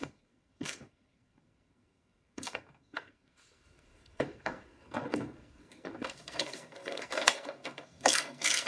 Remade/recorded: remade